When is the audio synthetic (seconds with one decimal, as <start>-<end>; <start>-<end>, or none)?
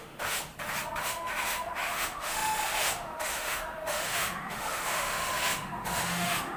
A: 0.0-0.5; 1.0-6.6